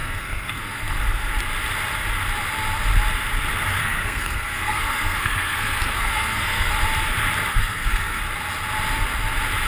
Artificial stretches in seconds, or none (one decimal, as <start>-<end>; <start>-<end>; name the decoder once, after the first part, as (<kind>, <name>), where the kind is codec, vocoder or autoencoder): 0.0-1.0 (codec, SNAC); 3.8-6.7; 7.5-8.2

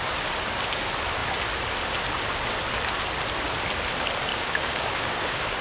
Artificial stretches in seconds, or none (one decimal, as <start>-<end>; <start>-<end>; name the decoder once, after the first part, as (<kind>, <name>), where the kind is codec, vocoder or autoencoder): 4.3-5.6 (codec, DAC)